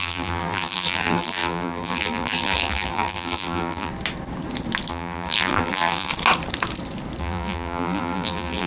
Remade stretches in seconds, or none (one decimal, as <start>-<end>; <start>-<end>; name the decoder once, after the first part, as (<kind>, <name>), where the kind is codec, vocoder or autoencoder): 0.0-3.9 (vocoder, BigVGAN v2); 4.9-6.1; 7.2-8.7